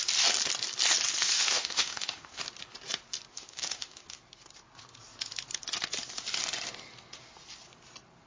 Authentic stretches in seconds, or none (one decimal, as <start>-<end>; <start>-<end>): 0.0-1.2; 2.4-3.3; 4.2-8.3